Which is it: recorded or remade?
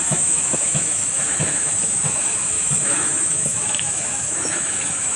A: remade